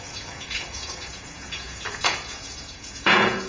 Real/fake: fake